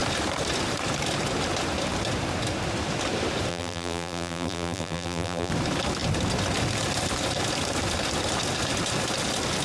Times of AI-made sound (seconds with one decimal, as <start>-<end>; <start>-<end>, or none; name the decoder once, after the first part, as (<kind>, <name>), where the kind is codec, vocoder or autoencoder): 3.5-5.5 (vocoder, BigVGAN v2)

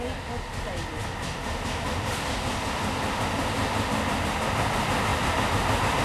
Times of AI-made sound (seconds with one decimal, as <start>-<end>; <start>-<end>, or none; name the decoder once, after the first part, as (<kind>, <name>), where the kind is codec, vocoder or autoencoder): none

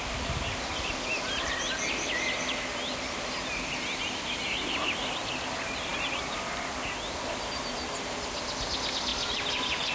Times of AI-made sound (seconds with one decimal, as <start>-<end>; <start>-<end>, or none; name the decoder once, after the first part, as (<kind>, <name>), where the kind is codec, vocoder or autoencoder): 5.9-8.4 (vocoder, BigVGAN v2); 9.1-9.9

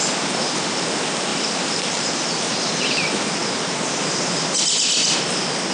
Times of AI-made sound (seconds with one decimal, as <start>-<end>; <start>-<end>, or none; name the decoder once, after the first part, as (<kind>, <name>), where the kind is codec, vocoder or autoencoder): 1.3-2.5 (vocoder, BigVGAN v2)

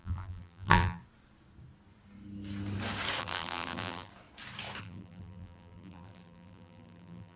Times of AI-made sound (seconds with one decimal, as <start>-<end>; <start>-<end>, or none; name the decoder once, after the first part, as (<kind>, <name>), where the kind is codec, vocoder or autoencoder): 0.0-1.0 (vocoder, BigVGAN v2); 3.2-4.1; 4.8-7.4